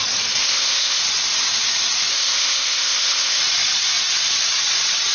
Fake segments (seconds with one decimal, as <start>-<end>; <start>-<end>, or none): 0.4-1.0; 2.1-3.4